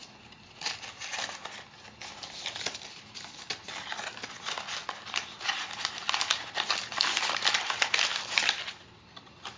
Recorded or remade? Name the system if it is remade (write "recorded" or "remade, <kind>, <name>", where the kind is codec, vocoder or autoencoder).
recorded